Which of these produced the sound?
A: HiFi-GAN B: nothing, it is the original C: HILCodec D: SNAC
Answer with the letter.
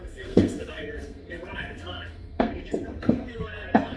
D